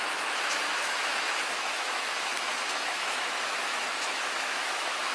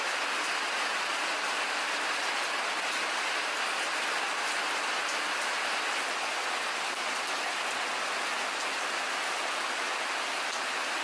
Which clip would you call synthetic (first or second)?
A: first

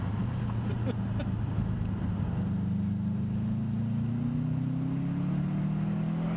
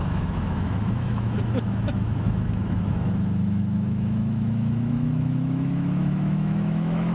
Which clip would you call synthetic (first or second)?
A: second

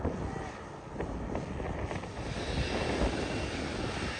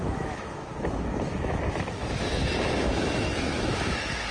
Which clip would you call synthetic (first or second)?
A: second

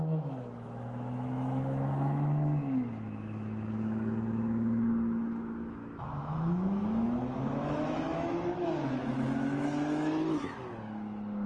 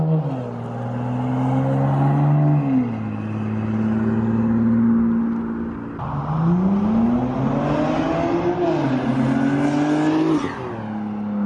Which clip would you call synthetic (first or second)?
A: first